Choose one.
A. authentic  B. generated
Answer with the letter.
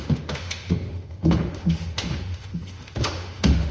B